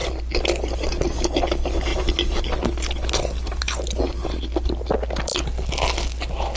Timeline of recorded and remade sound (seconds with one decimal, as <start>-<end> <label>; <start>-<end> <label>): 0.0-6.6 recorded